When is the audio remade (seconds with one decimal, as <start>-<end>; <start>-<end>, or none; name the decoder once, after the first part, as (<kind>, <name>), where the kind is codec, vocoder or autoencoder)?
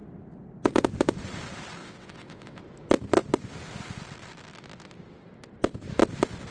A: 1.8-2.6 (vocoder, WaveNeXt)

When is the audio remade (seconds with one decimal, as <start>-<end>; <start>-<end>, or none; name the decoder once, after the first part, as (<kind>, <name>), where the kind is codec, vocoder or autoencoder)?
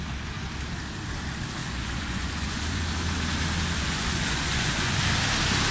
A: 1.6-2.8 (vocoder, Vocos); 3.8-5.0